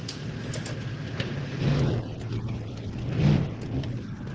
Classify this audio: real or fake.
real